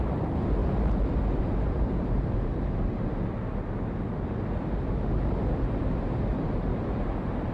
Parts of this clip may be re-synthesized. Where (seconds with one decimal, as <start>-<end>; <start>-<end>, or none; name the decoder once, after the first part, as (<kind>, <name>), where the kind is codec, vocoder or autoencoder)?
0.0-0.6 (vocoder, BigVGAN v2); 1.4-2.5; 5.9-7.5